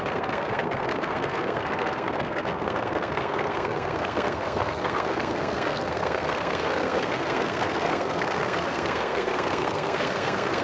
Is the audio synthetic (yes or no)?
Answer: yes